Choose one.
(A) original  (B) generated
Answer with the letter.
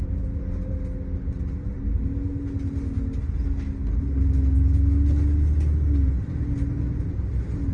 A